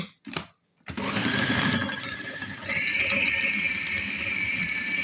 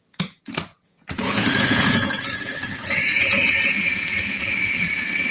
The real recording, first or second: first